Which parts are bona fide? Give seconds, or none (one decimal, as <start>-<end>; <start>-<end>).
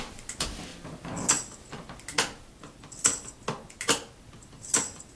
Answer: 0.0-5.2